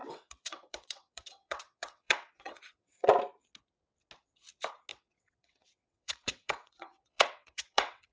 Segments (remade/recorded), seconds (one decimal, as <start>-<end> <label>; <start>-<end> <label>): 0.0-3.1 remade; 3.1-4.9 recorded; 4.9-8.1 remade